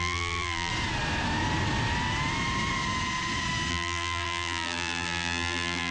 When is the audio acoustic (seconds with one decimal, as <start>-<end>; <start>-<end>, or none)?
0.7-3.7